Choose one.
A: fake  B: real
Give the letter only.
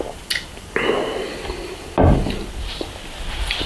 B